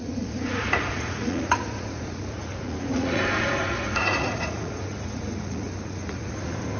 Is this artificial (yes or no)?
yes